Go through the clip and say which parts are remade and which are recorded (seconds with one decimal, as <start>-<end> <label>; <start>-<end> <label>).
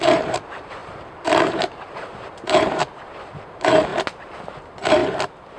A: 0.0-3.9 remade; 3.9-4.6 recorded; 4.6-5.0 remade; 5.0-5.6 recorded